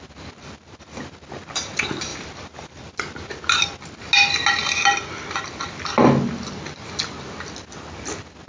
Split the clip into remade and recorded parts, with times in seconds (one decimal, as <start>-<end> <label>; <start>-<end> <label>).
0.0-8.5 recorded